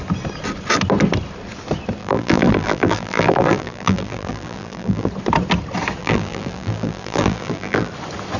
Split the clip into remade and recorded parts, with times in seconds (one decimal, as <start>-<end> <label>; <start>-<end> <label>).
0.0-2.0 recorded; 2.0-5.1 remade; 5.1-6.0 recorded; 6.0-7.9 remade; 7.9-8.4 recorded